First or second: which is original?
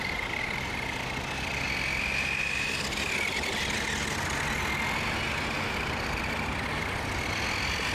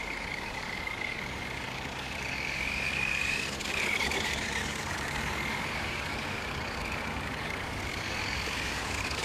first